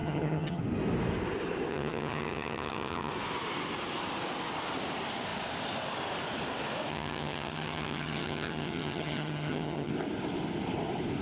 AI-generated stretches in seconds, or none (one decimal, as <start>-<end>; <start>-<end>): 0.0-0.6; 1.7-3.1; 6.9-9.9